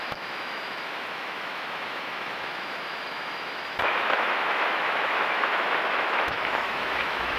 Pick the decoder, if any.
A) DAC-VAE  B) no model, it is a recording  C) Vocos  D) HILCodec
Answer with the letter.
A